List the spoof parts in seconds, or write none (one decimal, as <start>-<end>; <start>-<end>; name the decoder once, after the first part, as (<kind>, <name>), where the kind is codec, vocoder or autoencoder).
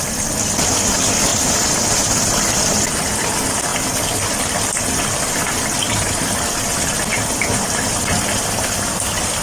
none